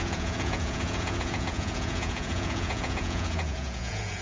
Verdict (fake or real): fake